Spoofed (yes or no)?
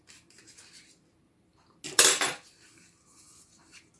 no